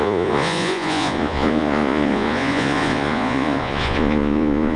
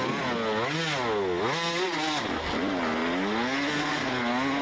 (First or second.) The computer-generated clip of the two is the first